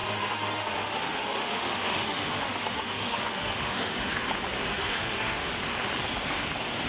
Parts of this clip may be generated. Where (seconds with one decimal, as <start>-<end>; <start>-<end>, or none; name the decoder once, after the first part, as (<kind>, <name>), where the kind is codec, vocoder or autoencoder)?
0.0-4.1 (autoencoder, DAC-VAE); 4.7-5.5